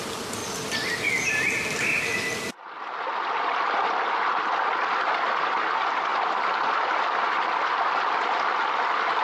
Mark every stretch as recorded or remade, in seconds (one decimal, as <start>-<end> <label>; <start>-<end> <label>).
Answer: 0.0-4.9 recorded; 4.9-5.4 remade; 5.4-9.2 recorded